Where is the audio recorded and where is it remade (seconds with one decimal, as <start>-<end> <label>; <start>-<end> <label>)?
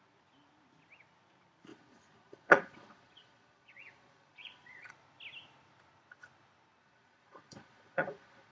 0.0-1.7 recorded; 1.7-4.9 remade; 4.9-6.8 recorded; 6.8-8.5 remade